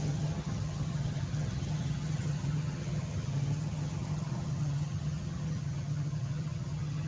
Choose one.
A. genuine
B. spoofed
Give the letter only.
B